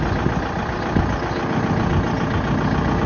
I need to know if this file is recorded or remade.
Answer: recorded